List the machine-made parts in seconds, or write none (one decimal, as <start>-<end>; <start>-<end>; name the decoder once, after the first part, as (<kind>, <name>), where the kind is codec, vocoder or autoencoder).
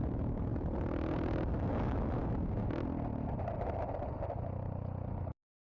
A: 0.0-0.5 (autoencoder, DAC-VAE); 1.6-2.2; 5.3-5.8